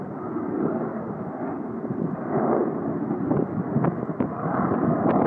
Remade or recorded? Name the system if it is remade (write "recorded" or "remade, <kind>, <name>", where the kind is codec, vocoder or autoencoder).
remade, vocoder, BigVGAN v2